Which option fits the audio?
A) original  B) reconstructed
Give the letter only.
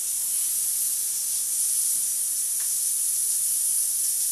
A